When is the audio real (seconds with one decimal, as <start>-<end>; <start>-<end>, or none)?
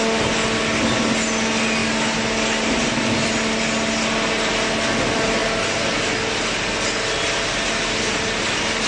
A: 0.0-8.9